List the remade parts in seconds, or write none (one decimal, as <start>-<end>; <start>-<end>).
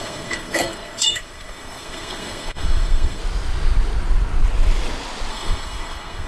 0.0-3.2; 5.3-6.3